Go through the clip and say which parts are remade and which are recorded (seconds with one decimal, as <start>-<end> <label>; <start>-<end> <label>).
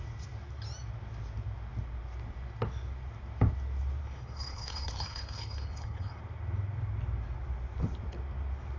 0.0-4.0 recorded; 4.0-6.2 remade; 6.2-8.8 recorded